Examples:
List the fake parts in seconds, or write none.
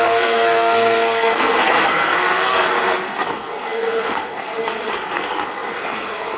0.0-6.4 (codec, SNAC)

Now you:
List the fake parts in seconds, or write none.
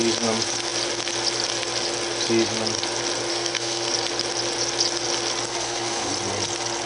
3.3-3.9 (codec, SNAC); 5.5-6.1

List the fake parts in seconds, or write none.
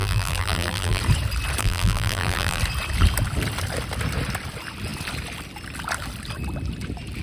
0.0-1.0 (vocoder, BigVGAN v2); 1.6-2.6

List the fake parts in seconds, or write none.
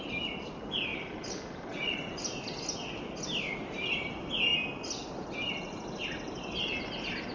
none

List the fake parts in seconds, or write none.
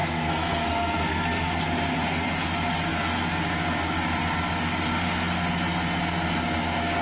0.0-1.5 (codec, SNAC)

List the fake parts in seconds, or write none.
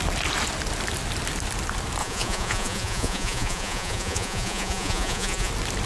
2.0-5.5 (vocoder, Vocos)